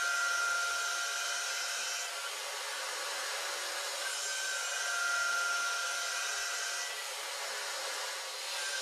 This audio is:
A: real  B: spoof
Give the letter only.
A